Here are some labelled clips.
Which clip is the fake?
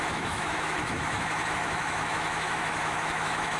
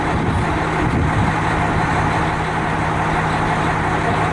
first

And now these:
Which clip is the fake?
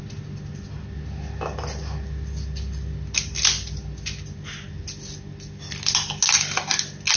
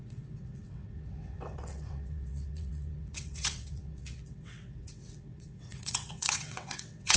second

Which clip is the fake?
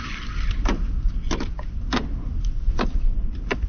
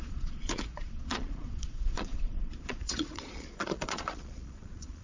second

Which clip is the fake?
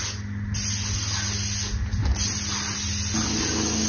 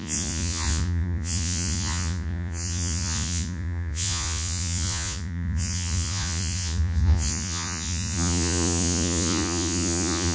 second